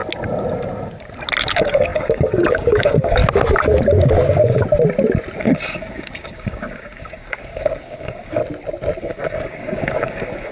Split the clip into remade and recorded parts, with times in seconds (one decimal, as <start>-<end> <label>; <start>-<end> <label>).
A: 0.0-1.4 recorded; 1.4-3.2 remade; 3.2-5.4 recorded; 5.4-8.4 remade; 8.4-9.0 recorded; 9.0-10.5 remade